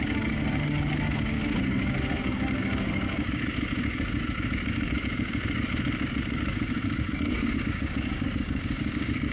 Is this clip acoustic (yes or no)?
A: no